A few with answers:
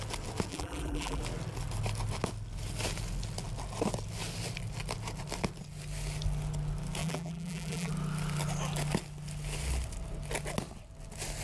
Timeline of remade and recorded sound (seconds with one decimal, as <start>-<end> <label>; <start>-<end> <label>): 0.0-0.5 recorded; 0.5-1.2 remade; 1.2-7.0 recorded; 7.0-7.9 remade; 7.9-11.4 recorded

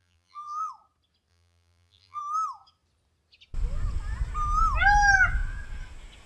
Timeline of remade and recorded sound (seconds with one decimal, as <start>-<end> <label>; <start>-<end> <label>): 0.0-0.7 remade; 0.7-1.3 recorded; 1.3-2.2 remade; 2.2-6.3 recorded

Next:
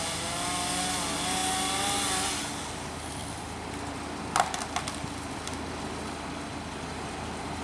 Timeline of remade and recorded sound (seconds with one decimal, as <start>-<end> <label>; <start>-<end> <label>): 0.0-7.6 recorded